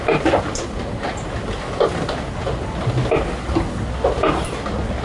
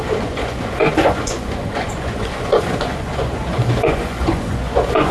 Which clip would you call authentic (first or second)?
first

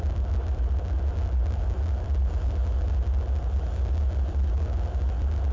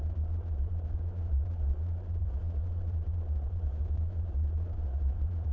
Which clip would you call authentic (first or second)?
first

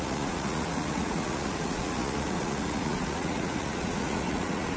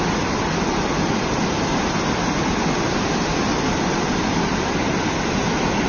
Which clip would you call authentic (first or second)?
second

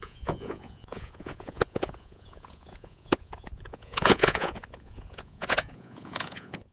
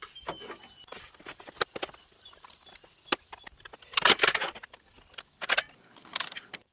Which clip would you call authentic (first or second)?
second